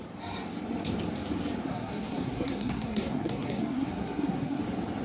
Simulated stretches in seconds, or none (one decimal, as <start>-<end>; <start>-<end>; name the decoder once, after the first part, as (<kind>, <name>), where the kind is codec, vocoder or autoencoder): 1.6-4.6 (codec, SNAC)